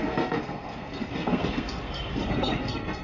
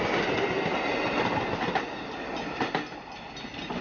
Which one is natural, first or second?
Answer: second